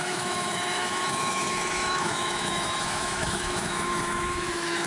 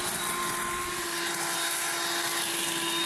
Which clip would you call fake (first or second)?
first